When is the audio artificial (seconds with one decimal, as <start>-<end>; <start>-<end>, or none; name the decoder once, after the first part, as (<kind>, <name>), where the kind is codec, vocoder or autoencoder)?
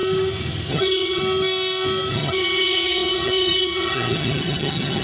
0.7-1.2 (vocoder, HiFi-GAN); 2.1-5.0